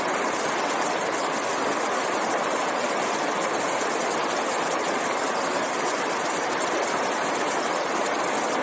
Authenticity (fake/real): real